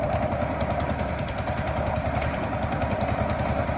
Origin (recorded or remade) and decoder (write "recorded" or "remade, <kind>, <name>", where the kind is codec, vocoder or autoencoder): remade, vocoder, BigVGAN v2